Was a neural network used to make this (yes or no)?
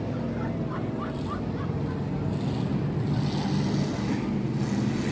no